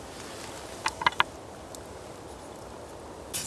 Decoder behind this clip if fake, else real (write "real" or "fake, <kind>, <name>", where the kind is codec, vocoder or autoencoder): real